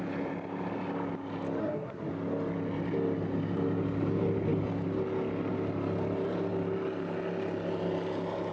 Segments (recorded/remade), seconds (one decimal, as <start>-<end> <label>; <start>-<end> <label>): 0.0-1.6 recorded; 1.6-2.1 remade; 2.1-8.5 recorded